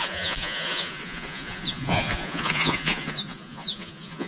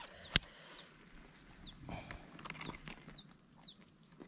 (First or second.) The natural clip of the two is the second